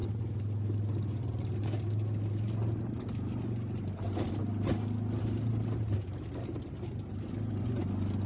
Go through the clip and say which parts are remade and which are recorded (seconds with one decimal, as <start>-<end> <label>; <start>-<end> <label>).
0.0-8.3 recorded